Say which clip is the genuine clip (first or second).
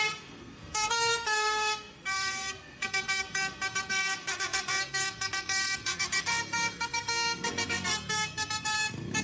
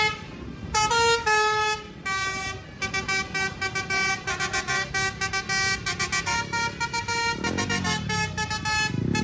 second